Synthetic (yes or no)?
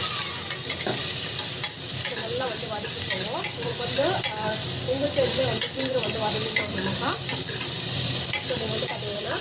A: yes